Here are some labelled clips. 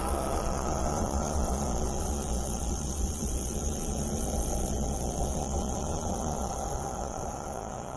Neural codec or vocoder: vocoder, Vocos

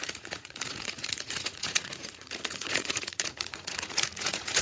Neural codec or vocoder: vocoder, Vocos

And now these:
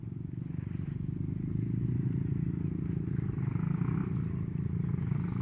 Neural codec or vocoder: none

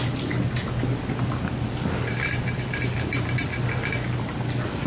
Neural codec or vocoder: none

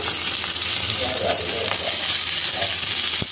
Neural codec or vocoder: none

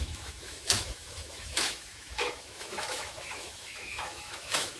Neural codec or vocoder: autoencoder, DAC-VAE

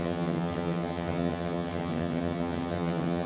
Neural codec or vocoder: vocoder, HiFi-GAN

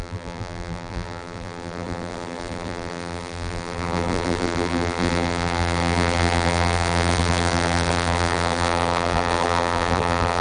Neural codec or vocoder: vocoder, BigVGAN v2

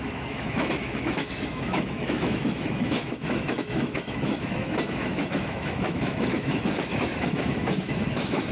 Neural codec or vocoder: autoencoder, DAC-VAE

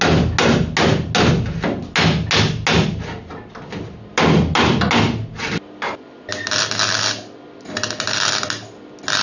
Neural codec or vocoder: none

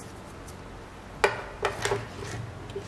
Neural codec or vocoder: none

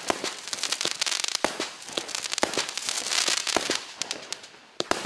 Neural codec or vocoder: vocoder, BigVGAN v2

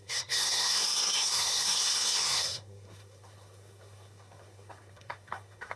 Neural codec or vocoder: codec, SNAC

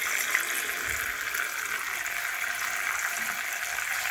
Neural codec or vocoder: none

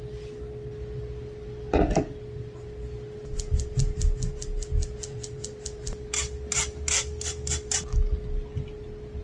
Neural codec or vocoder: none